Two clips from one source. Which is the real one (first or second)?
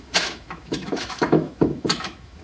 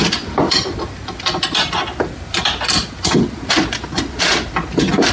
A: second